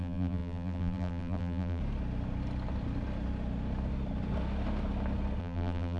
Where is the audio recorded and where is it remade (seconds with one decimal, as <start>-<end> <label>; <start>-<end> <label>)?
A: 0.0-1.8 remade; 1.8-5.4 recorded; 5.4-6.0 remade

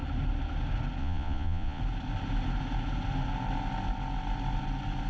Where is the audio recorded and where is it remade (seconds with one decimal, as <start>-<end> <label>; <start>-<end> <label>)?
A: 0.0-1.0 recorded; 1.0-1.8 remade; 1.8-5.1 recorded

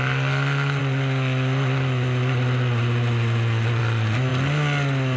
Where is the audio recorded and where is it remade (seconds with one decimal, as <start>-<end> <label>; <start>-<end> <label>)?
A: 0.0-5.2 recorded

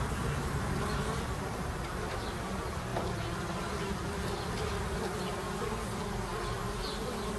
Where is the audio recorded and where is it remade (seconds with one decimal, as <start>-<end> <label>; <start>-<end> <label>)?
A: 0.0-7.4 recorded

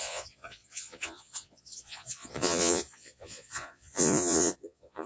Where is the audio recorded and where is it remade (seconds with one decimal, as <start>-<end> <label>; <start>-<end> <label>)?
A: 0.0-5.1 remade

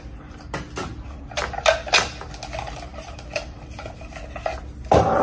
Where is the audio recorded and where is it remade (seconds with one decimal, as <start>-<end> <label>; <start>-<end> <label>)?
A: 0.0-2.9 recorded; 2.9-4.1 remade; 4.1-5.2 recorded